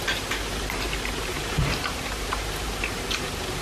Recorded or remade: remade